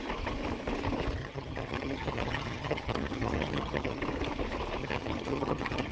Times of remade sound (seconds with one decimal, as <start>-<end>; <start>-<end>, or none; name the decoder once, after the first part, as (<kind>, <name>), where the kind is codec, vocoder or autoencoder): 1.2-4.0 (vocoder, HiFi-GAN); 4.8-5.9